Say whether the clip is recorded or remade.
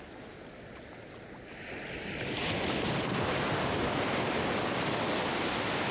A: recorded